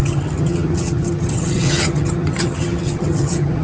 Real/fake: fake